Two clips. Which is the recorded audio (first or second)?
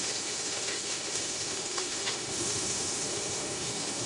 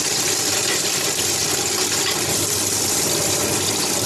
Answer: second